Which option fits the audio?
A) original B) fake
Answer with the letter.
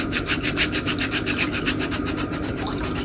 B